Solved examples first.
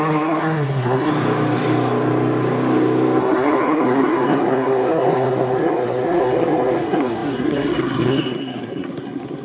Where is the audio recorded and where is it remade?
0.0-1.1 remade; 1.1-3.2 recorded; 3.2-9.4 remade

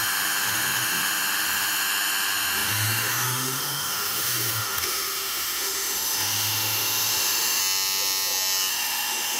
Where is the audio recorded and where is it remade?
0.0-7.6 remade; 7.6-8.7 recorded; 8.7-9.4 remade

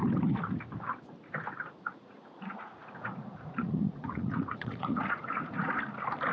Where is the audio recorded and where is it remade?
0.0-1.9 recorded; 1.9-5.7 remade; 5.7-6.3 recorded

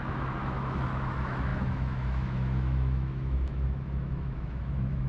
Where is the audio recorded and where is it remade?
0.0-5.1 remade

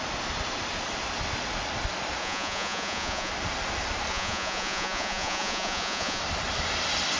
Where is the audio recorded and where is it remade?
0.0-2.2 recorded; 2.2-3.3 remade; 3.3-4.1 recorded; 4.1-6.2 remade; 6.2-7.2 recorded